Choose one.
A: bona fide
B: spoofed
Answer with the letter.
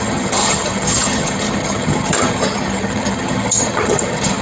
B